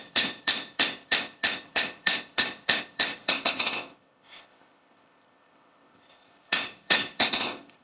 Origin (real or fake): fake